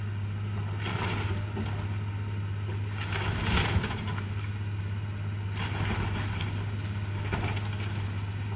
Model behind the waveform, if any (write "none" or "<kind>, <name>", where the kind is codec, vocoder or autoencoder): none